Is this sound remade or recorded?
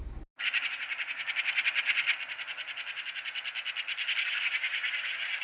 recorded